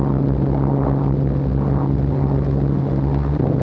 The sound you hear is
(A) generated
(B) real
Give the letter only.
B